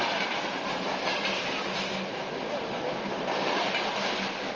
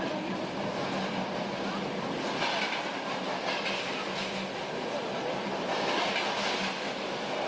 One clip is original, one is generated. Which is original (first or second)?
second